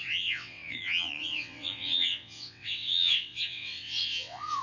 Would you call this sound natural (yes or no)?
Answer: no